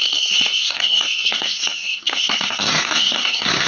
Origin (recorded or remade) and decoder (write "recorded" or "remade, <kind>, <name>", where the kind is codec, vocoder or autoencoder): remade, codec, SNAC